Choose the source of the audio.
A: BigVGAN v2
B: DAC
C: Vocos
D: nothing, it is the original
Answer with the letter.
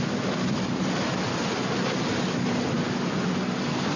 D